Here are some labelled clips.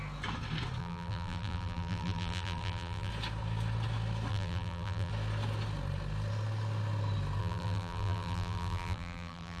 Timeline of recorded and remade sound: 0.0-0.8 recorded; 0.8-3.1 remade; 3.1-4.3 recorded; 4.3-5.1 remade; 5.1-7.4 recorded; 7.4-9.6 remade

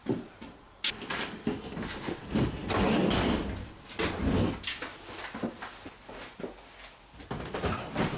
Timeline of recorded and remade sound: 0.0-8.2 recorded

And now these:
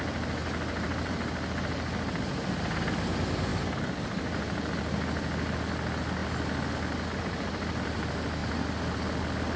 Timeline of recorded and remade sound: 0.0-3.5 recorded; 3.5-4.4 remade; 4.4-9.6 recorded